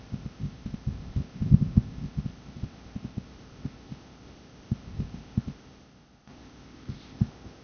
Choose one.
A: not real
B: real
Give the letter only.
A